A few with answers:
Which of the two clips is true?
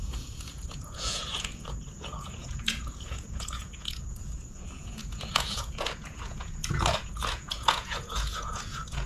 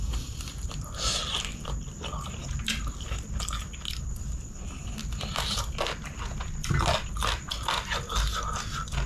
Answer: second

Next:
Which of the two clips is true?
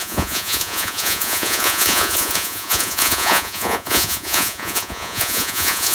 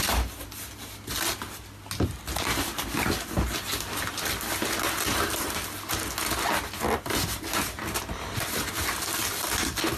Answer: second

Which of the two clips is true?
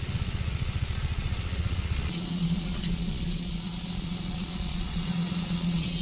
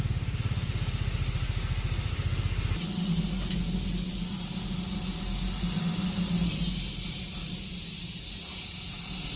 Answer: second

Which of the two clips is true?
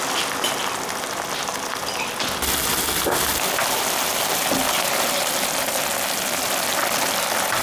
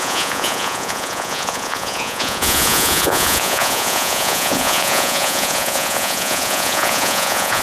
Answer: first